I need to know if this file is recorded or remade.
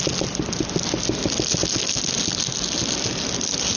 recorded